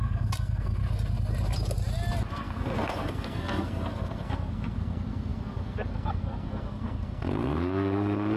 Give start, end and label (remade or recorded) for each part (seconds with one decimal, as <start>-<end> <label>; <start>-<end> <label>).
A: 0.0-0.8 remade; 0.8-2.3 recorded; 2.3-8.4 remade